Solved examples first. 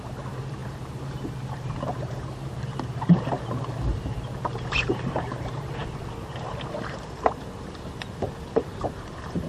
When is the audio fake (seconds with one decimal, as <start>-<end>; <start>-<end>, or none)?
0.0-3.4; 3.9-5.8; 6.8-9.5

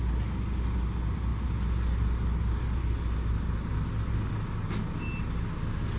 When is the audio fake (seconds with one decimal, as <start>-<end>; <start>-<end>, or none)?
none

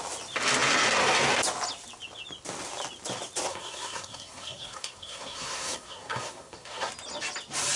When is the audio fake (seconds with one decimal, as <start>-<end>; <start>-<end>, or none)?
3.5-6.9